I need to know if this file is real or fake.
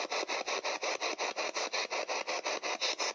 real